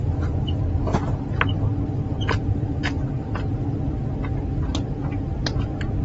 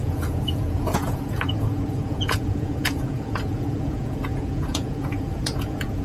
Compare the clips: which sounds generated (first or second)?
second